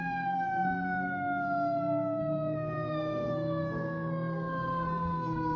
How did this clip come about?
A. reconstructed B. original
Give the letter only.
A